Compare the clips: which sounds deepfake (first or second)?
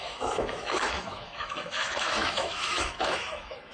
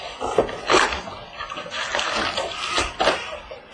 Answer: first